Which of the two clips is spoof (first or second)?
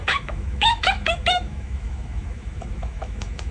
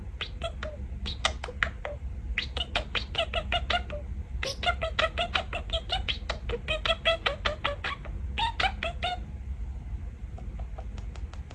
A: first